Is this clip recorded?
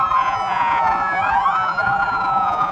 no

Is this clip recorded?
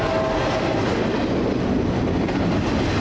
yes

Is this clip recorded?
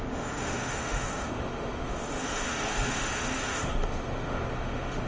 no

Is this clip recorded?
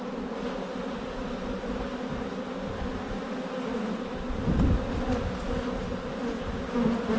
yes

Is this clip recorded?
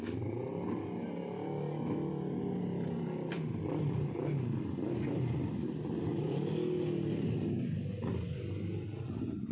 yes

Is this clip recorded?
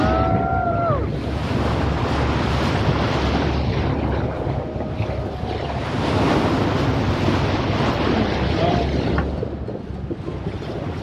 yes